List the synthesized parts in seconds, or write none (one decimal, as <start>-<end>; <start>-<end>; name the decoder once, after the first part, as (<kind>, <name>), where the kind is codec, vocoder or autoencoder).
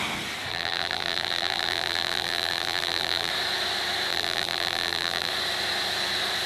0.5-3.3 (vocoder, BigVGAN v2); 4.1-5.3